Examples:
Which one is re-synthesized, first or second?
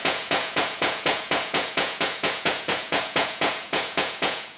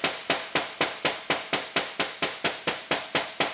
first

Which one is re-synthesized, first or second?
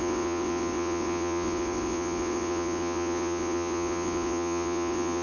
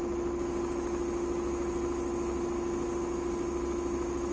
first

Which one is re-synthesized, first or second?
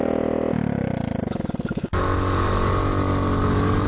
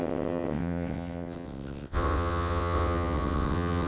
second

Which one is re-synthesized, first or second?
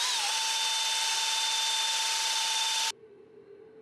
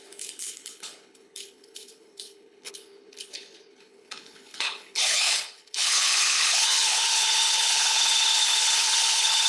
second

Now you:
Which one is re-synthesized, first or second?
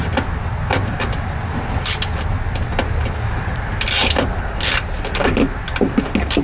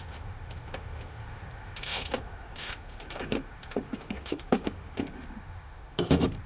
second